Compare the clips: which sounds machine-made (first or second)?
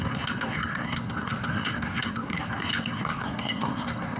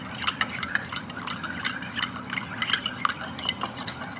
first